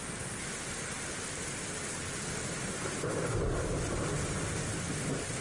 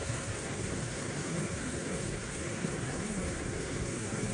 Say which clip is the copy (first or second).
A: second